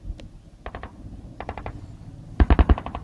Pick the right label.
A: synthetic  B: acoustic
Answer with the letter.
B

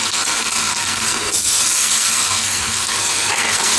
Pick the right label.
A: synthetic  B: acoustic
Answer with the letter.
A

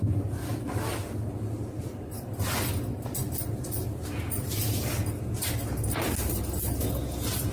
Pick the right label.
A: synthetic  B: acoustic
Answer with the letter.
B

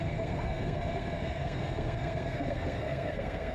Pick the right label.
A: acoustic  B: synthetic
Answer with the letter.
B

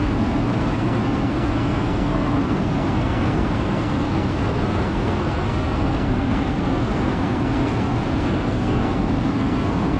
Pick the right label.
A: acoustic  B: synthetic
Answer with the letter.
B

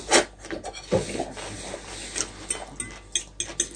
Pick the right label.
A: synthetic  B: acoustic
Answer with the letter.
B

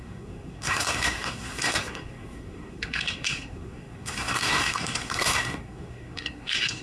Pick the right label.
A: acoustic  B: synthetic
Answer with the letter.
B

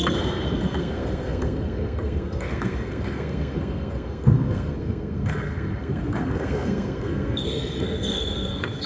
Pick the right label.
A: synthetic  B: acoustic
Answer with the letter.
A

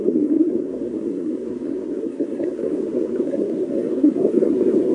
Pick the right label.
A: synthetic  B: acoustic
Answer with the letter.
A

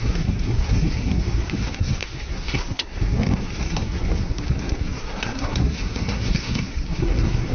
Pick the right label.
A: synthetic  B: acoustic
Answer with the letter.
A